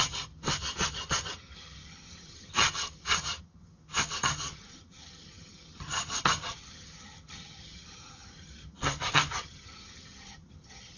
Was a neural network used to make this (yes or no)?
yes